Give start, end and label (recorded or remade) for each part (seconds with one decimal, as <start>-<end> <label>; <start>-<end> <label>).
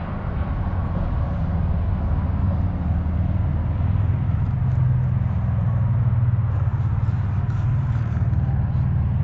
0.0-9.2 recorded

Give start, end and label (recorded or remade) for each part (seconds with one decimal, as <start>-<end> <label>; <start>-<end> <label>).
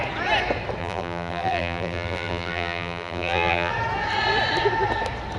0.0-0.8 recorded; 0.8-3.7 remade; 3.7-5.4 recorded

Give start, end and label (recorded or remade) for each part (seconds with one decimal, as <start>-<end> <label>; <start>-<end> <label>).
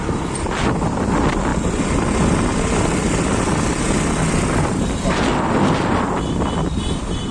0.0-1.5 recorded; 1.5-2.8 remade; 2.8-5.3 recorded; 5.3-6.0 remade; 6.0-7.3 recorded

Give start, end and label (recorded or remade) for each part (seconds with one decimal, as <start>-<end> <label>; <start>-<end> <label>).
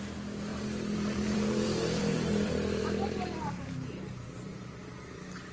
0.0-0.5 recorded; 0.5-3.6 remade; 3.6-5.5 recorded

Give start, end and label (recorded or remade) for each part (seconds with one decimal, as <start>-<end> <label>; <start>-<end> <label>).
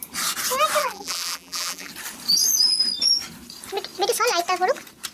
0.0-0.8 recorded; 0.8-1.9 remade; 1.9-5.1 recorded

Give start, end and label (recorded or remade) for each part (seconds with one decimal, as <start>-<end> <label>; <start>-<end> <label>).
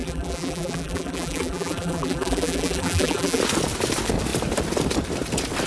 0.0-3.4 remade; 3.4-5.7 recorded